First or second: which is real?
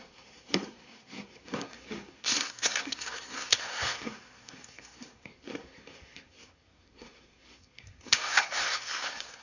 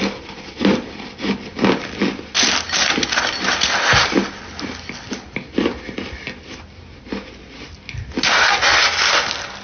second